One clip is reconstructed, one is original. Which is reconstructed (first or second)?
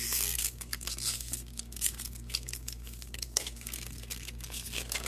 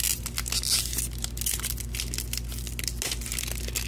first